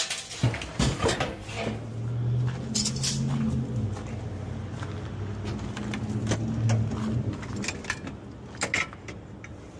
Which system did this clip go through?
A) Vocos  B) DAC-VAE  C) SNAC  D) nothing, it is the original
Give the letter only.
D